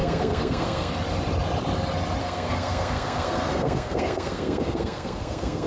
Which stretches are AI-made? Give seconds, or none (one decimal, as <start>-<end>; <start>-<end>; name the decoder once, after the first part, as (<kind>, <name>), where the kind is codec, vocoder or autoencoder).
0.0-0.9 (codec, SNAC); 2.2-5.7